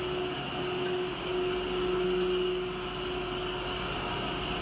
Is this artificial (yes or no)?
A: no